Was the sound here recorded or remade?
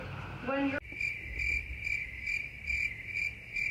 recorded